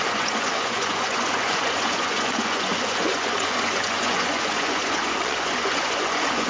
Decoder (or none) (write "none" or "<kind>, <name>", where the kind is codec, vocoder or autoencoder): vocoder, Vocos